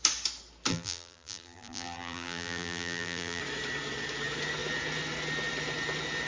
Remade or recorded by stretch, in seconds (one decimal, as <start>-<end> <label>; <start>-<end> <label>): 0.0-0.7 recorded; 0.7-3.4 remade; 3.4-6.3 recorded